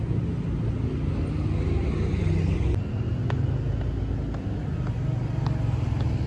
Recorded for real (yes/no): yes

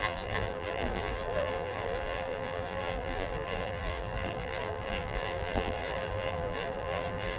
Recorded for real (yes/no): no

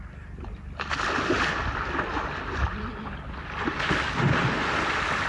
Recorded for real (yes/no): yes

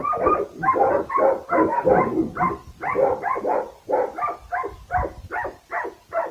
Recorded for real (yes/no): yes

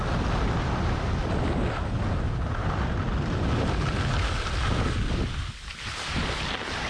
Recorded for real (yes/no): yes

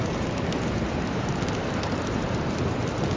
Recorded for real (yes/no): no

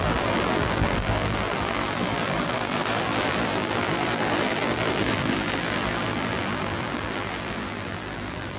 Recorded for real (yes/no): no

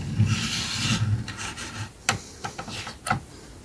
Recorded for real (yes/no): yes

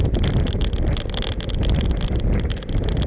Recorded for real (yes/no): yes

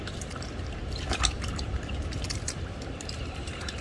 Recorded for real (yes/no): no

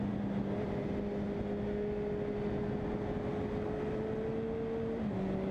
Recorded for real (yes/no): yes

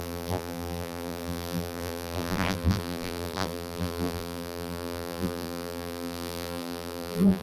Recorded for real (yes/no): no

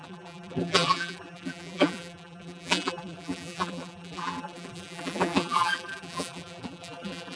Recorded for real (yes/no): no